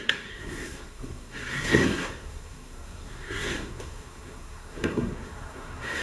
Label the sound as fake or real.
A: fake